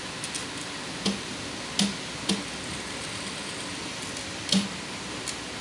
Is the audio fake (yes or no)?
no